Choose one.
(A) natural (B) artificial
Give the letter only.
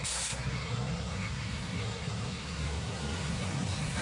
B